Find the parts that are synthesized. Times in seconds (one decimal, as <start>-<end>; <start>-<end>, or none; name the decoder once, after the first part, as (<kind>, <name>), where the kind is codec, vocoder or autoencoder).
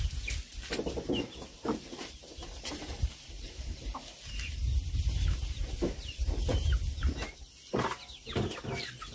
2.0-6.0 (vocoder, BigVGAN v2)